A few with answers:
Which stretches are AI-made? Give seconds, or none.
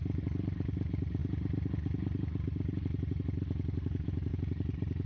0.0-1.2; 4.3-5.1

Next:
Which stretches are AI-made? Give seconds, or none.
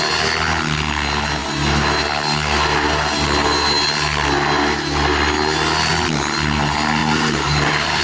7.0-8.0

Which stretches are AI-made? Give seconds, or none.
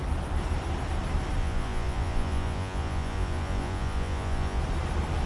1.4-4.6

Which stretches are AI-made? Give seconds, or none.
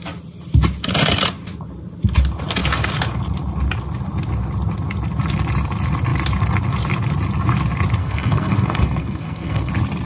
8.0-9.7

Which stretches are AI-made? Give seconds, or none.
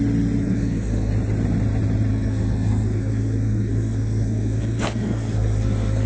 0.4-1.1; 2.1-6.1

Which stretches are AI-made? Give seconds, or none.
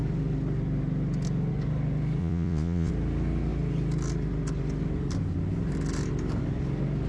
2.2-2.9